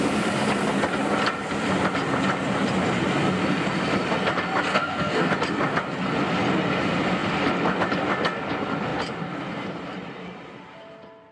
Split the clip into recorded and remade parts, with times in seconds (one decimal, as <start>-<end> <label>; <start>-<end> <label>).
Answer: 0.0-4.7 recorded; 4.7-5.3 remade; 5.3-11.3 recorded